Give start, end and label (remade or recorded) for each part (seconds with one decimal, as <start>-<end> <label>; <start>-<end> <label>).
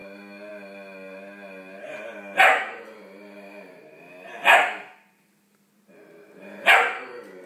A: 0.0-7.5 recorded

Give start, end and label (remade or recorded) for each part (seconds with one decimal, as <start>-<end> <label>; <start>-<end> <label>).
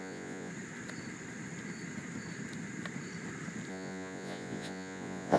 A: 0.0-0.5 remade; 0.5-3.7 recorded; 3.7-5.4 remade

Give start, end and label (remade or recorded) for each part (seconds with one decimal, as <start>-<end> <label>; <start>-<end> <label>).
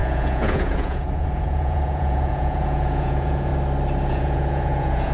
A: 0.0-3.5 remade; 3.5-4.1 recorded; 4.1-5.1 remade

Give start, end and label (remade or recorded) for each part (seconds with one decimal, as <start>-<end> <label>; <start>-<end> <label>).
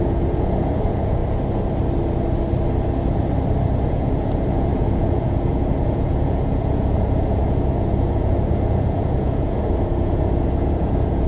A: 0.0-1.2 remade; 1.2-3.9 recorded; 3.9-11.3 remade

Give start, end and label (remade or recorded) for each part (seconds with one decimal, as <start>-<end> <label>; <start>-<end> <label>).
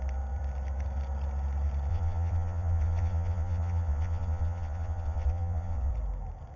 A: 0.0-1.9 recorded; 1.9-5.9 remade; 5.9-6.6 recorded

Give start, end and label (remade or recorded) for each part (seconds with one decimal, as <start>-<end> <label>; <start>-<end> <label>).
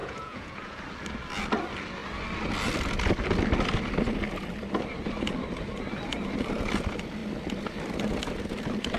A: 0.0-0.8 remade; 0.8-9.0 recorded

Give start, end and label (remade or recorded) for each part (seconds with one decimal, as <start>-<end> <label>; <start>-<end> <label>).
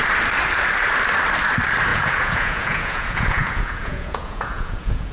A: 0.0-1.9 recorded; 1.9-5.1 remade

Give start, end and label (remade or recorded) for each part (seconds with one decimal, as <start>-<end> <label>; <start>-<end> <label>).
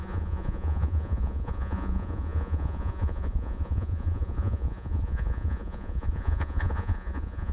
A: 0.0-7.5 remade